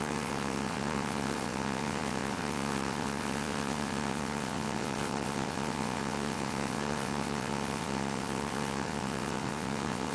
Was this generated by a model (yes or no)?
yes